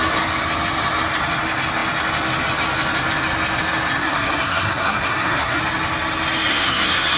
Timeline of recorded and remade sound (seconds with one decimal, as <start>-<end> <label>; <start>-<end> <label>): 0.0-4.0 recorded; 4.0-5.6 remade; 5.6-6.5 recorded; 6.5-7.2 remade